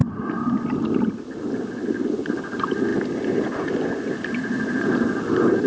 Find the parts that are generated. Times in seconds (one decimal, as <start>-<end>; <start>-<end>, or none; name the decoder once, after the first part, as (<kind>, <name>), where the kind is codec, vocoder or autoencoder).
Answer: none